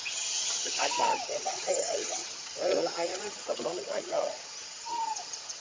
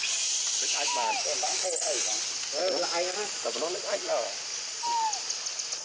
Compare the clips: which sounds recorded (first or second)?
second